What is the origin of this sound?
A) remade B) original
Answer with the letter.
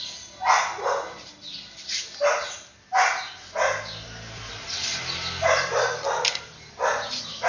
B